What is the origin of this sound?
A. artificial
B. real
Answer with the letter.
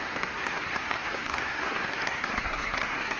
A